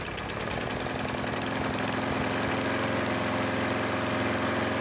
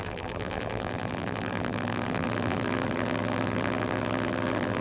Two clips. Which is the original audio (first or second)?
first